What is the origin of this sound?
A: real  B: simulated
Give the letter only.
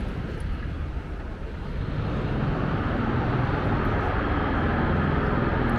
A